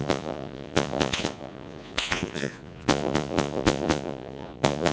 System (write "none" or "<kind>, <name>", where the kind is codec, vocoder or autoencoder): vocoder, Vocos